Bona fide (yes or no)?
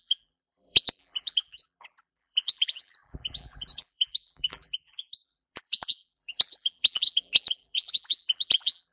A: no